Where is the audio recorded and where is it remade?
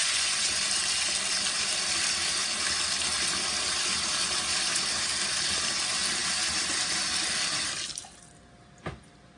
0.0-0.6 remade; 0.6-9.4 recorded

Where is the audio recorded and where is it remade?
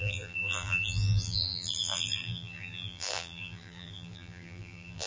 0.0-5.1 remade